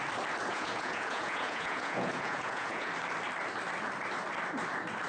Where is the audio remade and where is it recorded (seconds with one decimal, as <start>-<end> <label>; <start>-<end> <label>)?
0.0-0.5 recorded; 0.5-2.9 remade; 2.9-5.1 recorded